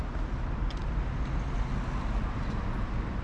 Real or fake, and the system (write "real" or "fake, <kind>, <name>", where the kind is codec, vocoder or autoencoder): real